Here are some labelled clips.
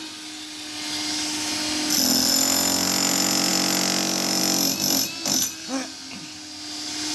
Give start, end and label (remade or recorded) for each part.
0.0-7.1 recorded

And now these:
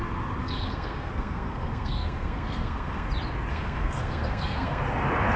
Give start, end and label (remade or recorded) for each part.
0.0-0.4 recorded; 0.4-3.1 remade; 3.1-3.5 recorded; 3.5-4.8 remade; 4.8-5.4 recorded